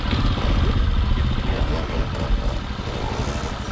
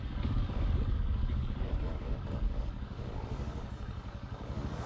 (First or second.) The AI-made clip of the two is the second